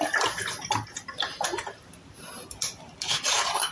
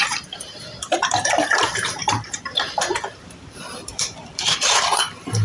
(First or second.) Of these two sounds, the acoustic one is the first